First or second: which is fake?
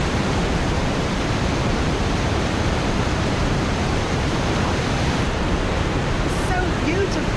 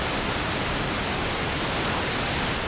first